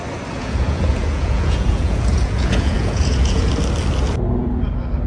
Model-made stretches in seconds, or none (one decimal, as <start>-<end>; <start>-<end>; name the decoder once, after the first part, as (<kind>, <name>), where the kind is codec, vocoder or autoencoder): 0.4-3.5 (vocoder, Vocos)